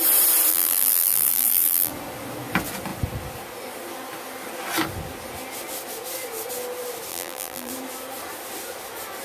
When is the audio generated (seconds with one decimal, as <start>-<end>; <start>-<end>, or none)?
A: 0.5-1.9; 7.1-7.7